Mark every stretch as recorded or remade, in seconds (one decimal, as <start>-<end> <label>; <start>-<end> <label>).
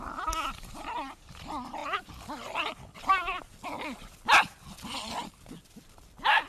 0.0-1.8 remade; 1.8-5.7 recorded; 5.7-6.5 remade